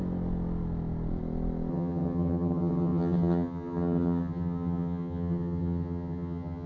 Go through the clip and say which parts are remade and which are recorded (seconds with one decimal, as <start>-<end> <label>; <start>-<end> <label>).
0.0-1.7 recorded; 1.7-6.7 remade